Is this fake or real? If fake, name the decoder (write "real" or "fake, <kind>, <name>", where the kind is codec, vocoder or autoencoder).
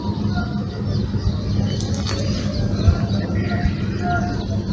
real